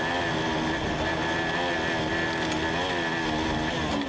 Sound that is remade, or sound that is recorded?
recorded